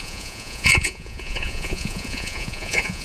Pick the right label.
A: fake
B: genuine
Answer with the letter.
A